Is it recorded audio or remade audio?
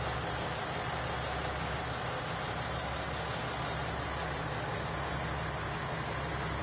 recorded